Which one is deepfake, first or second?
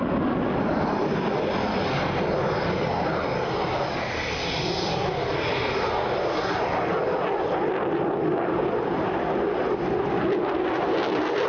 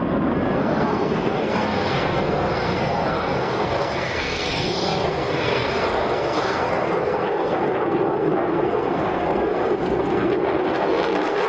second